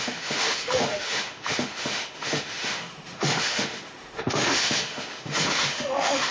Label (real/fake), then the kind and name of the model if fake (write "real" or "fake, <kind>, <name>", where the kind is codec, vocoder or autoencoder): fake, autoencoder, DAC-VAE